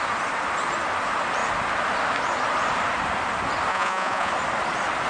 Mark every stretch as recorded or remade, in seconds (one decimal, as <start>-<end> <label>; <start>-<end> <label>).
0.0-3.7 recorded; 3.7-4.3 remade; 4.3-5.1 recorded